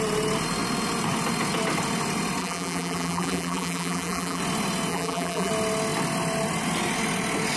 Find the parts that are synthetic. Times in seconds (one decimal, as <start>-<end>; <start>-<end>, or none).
2.4-4.4; 4.9-5.5